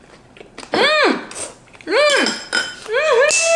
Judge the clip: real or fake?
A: real